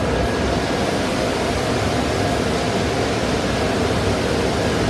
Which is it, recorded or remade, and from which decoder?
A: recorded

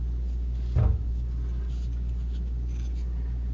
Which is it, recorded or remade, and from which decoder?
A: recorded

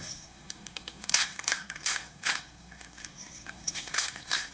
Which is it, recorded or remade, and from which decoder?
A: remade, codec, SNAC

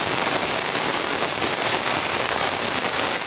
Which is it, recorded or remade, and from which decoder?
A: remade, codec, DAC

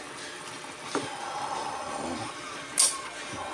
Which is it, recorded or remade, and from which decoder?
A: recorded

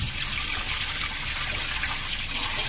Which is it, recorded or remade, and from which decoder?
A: recorded